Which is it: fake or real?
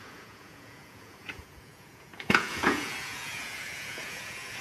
fake